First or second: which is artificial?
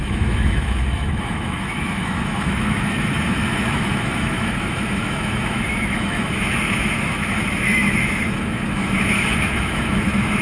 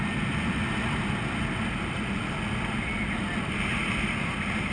first